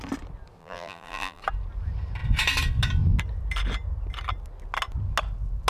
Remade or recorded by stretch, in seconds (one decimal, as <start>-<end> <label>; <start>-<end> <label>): 0.0-0.6 recorded; 0.6-1.4 remade; 1.4-5.7 recorded